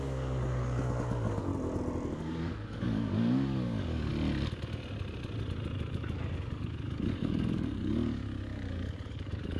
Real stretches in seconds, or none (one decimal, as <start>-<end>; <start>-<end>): 1.5-2.1; 4.1-5.9